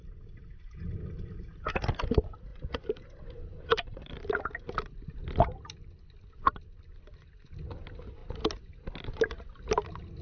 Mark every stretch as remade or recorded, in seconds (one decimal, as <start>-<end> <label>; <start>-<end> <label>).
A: 0.0-2.5 recorded; 2.5-4.3 remade; 4.3-10.2 recorded